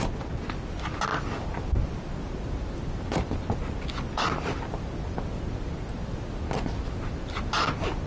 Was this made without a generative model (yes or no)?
yes